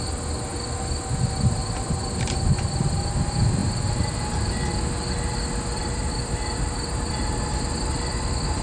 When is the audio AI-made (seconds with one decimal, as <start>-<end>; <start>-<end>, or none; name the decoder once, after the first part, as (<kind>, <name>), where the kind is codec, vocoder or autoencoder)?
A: none